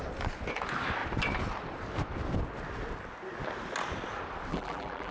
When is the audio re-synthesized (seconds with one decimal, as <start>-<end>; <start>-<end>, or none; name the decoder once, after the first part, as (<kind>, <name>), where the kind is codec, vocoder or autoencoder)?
4.5-5.1 (vocoder, BigVGAN v2)